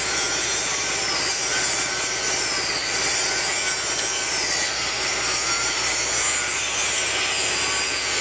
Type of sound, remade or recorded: recorded